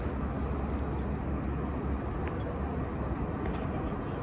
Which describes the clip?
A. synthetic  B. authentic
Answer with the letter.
B